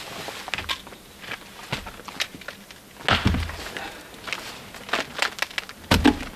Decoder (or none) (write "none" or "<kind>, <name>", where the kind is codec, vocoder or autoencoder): none